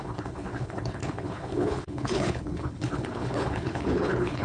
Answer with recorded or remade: remade